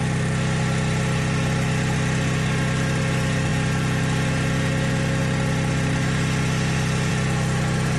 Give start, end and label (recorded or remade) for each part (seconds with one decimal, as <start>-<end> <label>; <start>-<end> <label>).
0.0-8.0 recorded